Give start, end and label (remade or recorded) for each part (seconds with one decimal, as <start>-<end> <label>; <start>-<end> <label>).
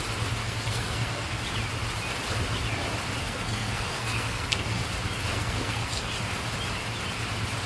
0.0-0.4 recorded; 0.4-1.4 remade; 1.4-3.2 recorded; 3.2-4.8 remade; 4.8-5.3 recorded; 5.3-6.1 remade; 6.1-7.7 recorded